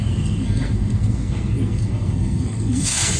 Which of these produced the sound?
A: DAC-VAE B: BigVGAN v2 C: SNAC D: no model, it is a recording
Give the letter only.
C